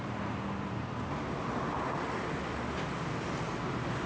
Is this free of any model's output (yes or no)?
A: yes